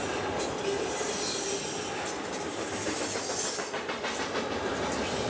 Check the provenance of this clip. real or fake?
real